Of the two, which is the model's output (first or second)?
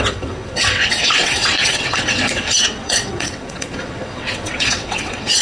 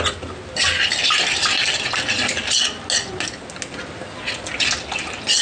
first